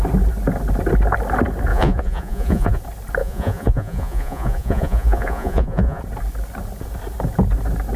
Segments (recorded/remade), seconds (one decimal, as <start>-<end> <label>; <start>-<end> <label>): 0.0-1.7 recorded; 1.7-2.8 remade; 2.8-3.2 recorded; 3.2-6.0 remade; 6.0-8.0 recorded